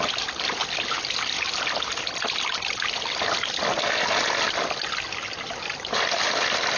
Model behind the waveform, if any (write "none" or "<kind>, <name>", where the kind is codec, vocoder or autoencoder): none